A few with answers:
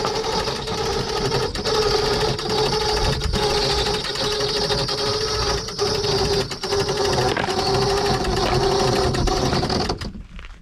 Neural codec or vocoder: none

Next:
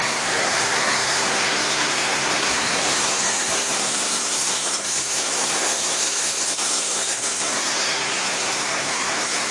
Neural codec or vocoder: codec, SNAC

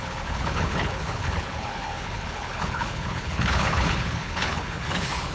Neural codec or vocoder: codec, HILCodec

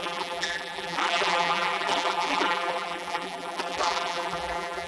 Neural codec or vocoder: vocoder, BigVGAN v2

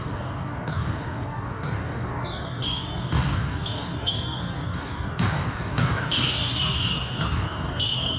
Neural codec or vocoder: codec, DAC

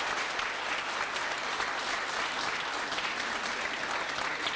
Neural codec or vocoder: none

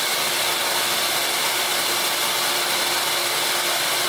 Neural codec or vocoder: none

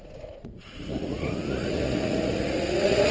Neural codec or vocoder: vocoder, Vocos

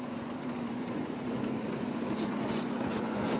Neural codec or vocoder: vocoder, Vocos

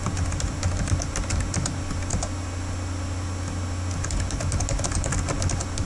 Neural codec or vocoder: none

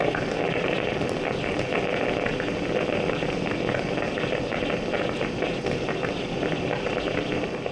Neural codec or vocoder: none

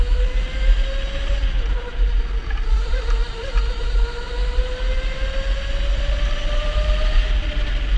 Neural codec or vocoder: none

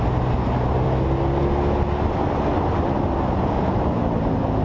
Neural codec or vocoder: none